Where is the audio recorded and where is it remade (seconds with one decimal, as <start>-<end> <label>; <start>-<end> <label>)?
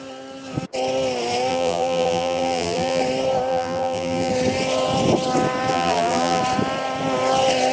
0.0-1.5 recorded; 1.5-3.0 remade; 3.0-3.5 recorded; 3.5-4.3 remade; 4.3-5.7 recorded; 5.7-6.4 remade; 6.4-7.7 recorded